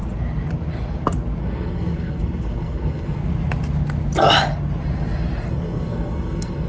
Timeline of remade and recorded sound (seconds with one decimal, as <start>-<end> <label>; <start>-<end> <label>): 0.0-1.4 recorded; 1.4-3.2 remade; 3.2-5.5 recorded; 5.5-6.7 remade